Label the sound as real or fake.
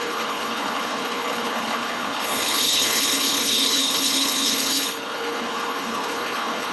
fake